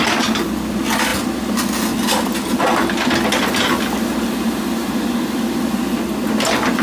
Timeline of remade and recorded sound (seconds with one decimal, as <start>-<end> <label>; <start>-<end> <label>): 0.0-6.8 recorded